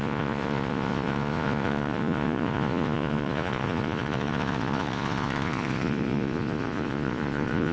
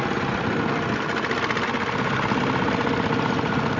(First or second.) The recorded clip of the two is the second